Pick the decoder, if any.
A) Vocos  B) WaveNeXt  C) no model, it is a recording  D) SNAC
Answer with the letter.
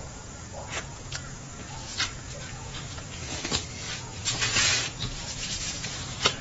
A